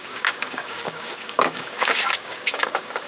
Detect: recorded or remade remade